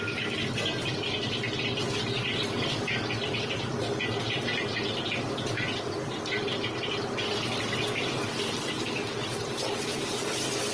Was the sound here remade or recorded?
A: recorded